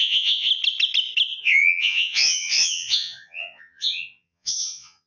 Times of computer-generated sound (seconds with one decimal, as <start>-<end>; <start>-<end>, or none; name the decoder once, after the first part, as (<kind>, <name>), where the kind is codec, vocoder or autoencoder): 0.0-0.5 (vocoder, Vocos); 1.4-5.1